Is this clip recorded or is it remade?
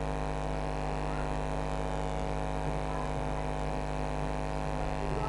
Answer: recorded